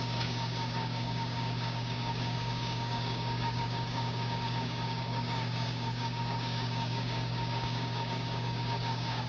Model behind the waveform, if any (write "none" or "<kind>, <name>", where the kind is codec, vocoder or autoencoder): codec, DAC